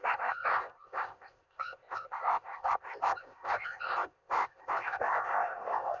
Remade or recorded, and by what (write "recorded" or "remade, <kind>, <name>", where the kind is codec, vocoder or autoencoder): remade, codec, ZipCodec